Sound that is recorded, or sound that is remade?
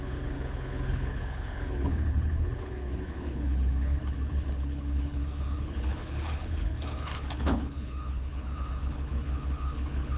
remade